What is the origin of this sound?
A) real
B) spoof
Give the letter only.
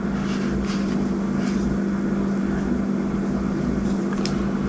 A